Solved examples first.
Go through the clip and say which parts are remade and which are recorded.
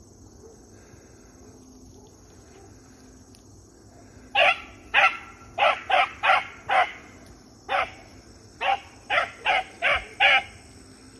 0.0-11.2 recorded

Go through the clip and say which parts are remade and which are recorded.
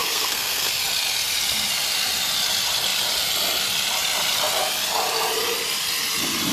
0.0-0.7 remade; 0.7-6.5 recorded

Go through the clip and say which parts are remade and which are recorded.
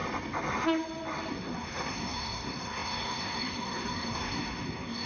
0.0-1.3 recorded; 1.3-5.1 remade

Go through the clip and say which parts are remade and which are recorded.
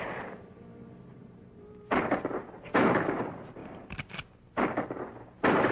0.0-3.6 remade; 3.6-5.2 recorded; 5.2-5.7 remade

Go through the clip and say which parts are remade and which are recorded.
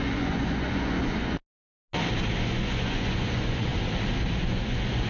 0.0-1.4 remade; 1.4-2.4 recorded; 2.4-3.7 remade; 3.7-4.4 recorded; 4.4-5.1 remade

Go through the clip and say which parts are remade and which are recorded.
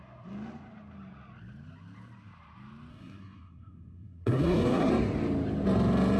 0.0-2.9 recorded; 2.9-4.9 remade; 4.9-6.2 recorded